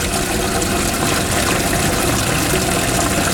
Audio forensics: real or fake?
real